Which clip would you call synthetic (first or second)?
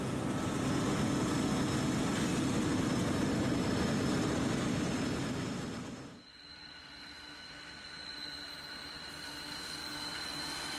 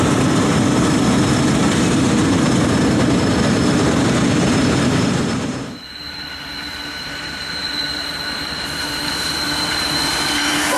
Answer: second